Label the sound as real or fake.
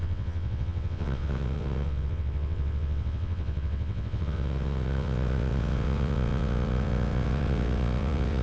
fake